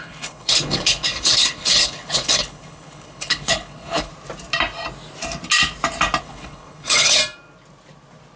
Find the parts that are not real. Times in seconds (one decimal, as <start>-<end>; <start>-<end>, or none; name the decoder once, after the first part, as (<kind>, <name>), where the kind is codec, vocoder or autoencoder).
0.0-4.1 (codec, HILCodec); 6.2-7.2